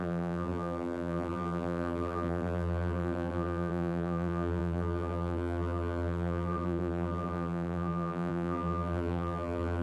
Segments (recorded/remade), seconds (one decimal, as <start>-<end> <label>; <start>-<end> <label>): 0.0-9.8 remade

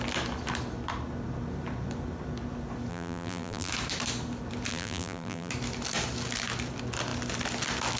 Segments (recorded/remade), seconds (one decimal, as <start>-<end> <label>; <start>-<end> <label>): 0.0-2.9 recorded; 2.9-3.7 remade; 3.7-4.7 recorded; 4.7-5.5 remade; 5.5-8.0 recorded

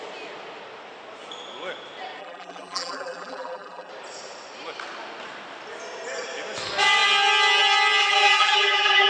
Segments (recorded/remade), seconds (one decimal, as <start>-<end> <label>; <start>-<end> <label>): 0.0-2.2 recorded; 2.2-3.9 remade; 3.9-8.0 recorded; 8.0-9.1 remade